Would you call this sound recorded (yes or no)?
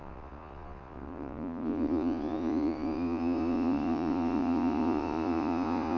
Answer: no